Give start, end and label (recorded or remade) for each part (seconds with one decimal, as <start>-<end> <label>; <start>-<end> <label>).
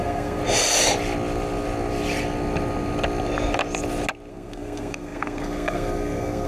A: 0.0-0.4 remade; 0.4-4.3 recorded; 4.3-6.5 remade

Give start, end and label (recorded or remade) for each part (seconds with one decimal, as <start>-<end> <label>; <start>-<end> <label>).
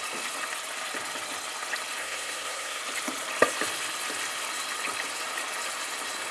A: 0.0-2.0 recorded; 2.0-2.8 remade; 2.8-6.3 recorded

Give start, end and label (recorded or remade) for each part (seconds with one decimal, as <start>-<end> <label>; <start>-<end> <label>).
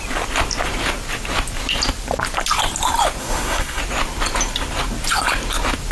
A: 0.0-3.2 recorded; 3.2-3.8 remade; 3.8-5.9 recorded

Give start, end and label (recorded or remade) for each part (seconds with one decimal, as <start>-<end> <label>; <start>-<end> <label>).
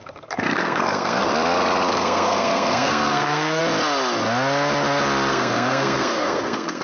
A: 0.0-1.3 remade; 1.3-1.9 recorded; 1.9-3.6 remade; 3.6-5.3 recorded; 5.3-6.8 remade